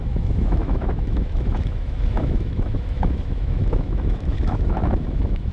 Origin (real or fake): fake